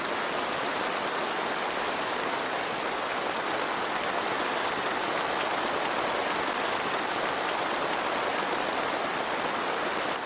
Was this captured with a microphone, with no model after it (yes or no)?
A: yes